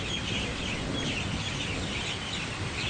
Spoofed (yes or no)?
no